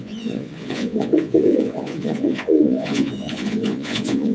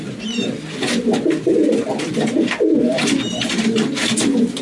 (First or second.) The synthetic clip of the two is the first